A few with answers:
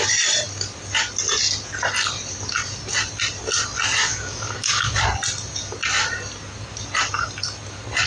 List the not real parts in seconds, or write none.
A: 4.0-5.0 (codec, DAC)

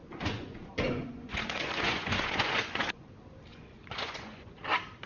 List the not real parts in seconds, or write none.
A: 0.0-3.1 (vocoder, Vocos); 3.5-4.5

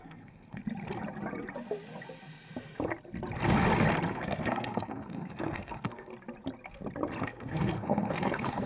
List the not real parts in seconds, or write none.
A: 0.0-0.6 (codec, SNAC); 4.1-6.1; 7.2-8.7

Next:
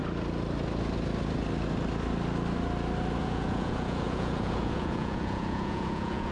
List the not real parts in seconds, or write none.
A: 3.2-6.3 (vocoder, Vocos)